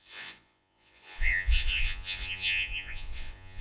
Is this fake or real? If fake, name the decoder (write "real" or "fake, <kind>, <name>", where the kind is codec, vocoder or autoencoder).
fake, vocoder, Vocos